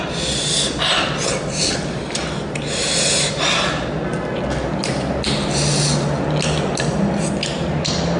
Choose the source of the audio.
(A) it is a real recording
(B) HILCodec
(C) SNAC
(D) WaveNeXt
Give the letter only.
A